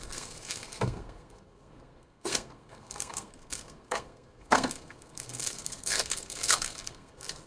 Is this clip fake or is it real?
fake